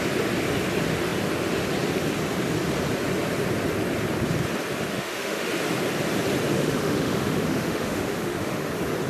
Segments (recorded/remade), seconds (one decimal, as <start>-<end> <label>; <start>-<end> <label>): 0.0-4.9 recorded; 4.9-5.5 remade; 5.5-6.5 recorded; 6.5-8.7 remade; 8.7-9.1 recorded